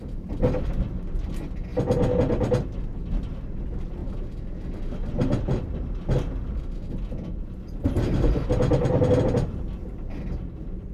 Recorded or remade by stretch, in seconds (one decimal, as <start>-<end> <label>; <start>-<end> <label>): 0.0-10.9 recorded

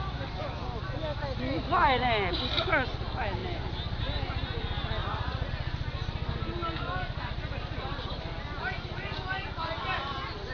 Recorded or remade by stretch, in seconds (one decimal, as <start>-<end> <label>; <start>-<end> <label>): 0.0-5.0 recorded; 5.0-5.5 remade; 5.5-10.5 recorded

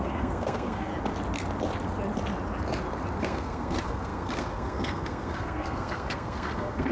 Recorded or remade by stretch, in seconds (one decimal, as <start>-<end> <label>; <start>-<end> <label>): 0.0-0.9 remade; 0.9-3.2 recorded; 3.2-6.9 remade